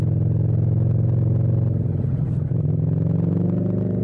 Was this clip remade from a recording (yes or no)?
no